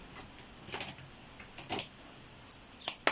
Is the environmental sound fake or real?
real